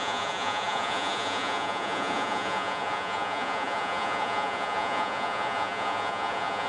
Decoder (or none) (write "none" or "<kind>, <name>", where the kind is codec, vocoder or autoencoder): vocoder, Vocos